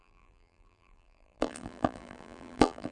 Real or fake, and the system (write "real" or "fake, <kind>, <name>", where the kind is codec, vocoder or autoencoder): fake, vocoder, BigVGAN v2